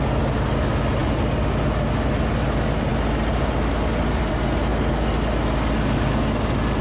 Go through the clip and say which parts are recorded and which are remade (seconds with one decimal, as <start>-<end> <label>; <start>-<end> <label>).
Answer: 0.0-6.8 recorded